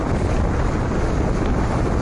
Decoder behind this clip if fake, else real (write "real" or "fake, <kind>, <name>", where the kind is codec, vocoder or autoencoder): real